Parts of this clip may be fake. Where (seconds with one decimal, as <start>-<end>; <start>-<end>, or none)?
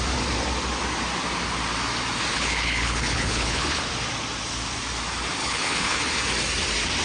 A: 2.3-3.9; 5.4-6.2